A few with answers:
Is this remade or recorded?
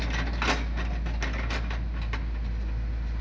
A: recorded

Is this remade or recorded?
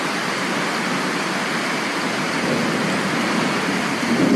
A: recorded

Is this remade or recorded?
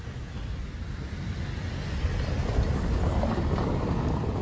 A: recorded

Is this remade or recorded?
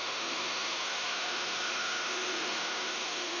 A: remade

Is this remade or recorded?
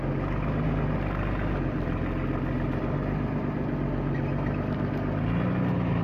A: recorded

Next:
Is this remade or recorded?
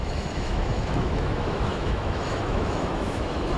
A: remade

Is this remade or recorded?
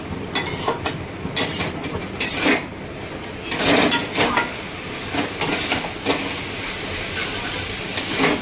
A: recorded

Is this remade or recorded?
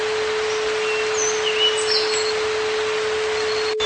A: recorded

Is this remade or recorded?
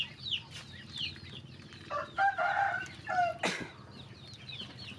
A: recorded